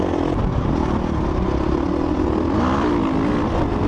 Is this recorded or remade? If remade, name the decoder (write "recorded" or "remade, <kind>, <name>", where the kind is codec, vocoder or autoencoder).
recorded